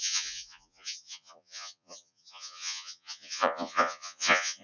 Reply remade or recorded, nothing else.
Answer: remade